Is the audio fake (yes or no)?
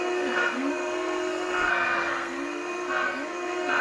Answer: yes